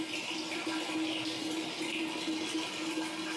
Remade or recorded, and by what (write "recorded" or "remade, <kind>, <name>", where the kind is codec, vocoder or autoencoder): recorded